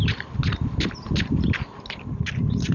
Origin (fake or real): real